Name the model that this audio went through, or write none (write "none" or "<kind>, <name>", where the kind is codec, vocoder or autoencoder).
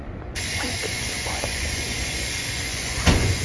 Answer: vocoder, Vocos